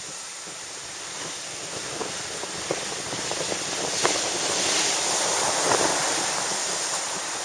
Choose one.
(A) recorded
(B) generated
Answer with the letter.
A